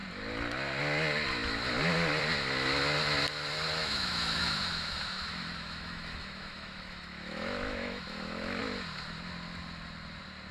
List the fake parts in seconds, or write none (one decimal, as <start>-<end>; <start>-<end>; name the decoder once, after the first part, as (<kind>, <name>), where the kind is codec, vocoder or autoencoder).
3.8-8.6 (autoencoder, DAC-VAE)